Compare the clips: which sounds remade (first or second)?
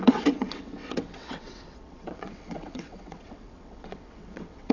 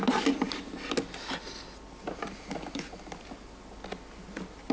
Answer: first